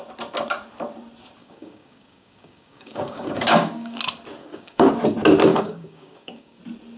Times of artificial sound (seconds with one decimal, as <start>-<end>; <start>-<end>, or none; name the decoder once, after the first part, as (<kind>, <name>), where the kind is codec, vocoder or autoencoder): 1.4-4.0 (codec, DAC); 4.4-4.9; 5.5-6.6